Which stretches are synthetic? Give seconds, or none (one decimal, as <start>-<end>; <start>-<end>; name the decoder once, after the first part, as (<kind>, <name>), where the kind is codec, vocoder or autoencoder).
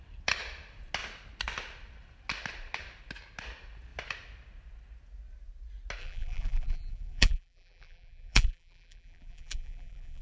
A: 6.0-10.2 (vocoder, BigVGAN v2)